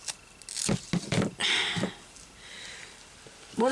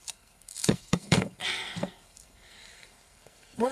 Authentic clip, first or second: first